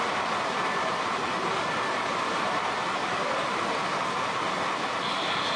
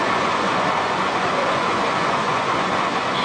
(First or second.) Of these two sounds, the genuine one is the first